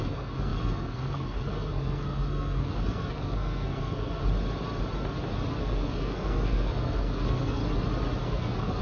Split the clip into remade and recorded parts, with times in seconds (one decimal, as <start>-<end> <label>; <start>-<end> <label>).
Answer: 0.0-4.2 remade; 4.2-5.6 recorded; 5.6-7.6 remade; 7.6-8.2 recorded; 8.2-8.8 remade